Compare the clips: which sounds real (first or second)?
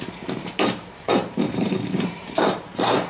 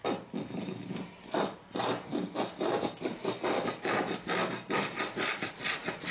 second